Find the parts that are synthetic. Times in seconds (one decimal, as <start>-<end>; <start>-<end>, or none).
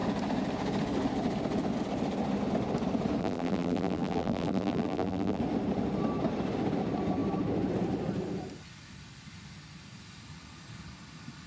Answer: 3.2-5.4